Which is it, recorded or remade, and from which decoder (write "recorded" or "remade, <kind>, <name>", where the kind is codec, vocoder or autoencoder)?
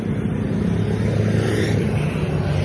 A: recorded